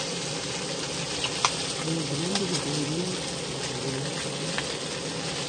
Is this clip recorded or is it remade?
recorded